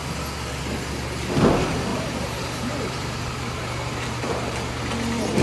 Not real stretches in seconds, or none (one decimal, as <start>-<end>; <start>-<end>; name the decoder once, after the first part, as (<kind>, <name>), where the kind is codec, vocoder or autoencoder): 1.9-4.8 (vocoder, BigVGAN v2)